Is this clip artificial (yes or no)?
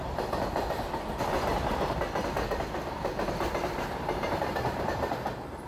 no